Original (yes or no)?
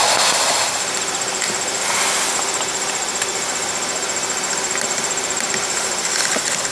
yes